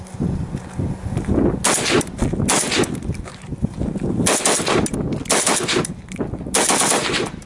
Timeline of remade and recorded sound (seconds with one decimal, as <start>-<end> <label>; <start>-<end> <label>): 0.0-7.5 recorded